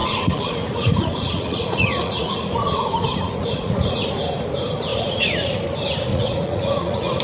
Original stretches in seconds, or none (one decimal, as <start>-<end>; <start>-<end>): 4.1-4.9; 5.6-6.1